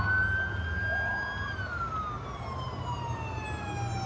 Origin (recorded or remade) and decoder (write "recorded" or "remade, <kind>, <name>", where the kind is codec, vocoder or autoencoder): recorded